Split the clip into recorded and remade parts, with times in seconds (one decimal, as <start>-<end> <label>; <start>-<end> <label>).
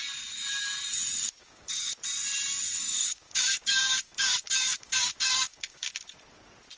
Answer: 0.0-1.4 recorded; 1.4-1.9 remade; 1.9-2.8 recorded; 2.8-5.9 remade; 5.9-6.8 recorded